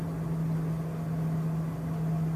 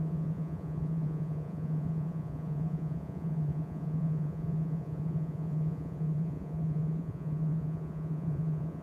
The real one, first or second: first